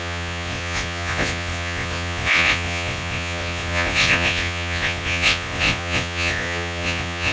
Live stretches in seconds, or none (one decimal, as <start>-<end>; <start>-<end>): none